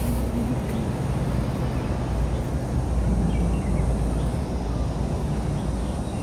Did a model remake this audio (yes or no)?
no